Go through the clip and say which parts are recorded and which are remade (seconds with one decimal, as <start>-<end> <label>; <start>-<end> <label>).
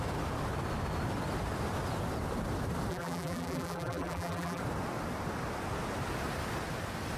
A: 0.0-2.9 recorded; 2.9-4.6 remade; 4.6-7.2 recorded